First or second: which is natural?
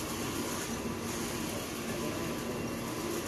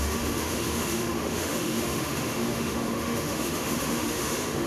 first